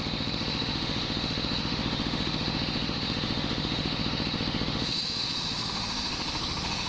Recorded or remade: remade